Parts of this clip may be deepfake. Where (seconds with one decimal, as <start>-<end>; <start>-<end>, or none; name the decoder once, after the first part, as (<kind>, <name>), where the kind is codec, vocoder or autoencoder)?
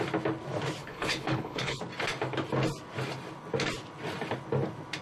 0.8-1.8 (codec, HILCodec)